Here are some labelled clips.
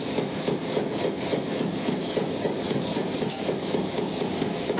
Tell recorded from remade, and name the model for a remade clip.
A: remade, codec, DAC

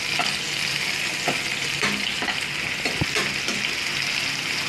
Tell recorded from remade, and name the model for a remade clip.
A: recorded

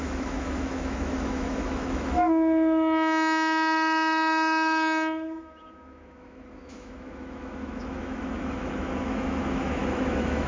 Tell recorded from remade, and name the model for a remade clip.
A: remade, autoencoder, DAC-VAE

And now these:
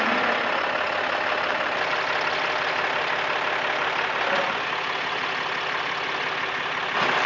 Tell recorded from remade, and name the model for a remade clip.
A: recorded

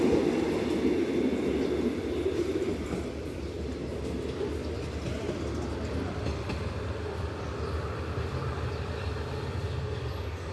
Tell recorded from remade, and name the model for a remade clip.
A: recorded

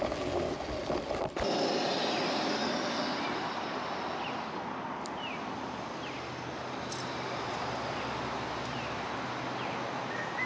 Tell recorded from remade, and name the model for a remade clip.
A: recorded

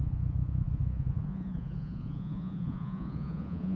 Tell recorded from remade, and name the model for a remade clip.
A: remade, vocoder, Vocos